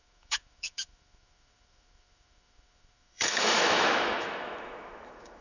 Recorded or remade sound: remade